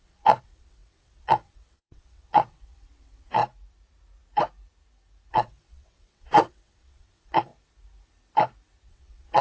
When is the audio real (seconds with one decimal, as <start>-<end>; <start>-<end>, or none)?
3.4-5.3; 7.5-8.9